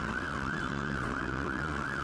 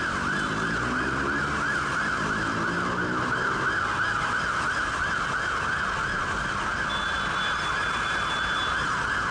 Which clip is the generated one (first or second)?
first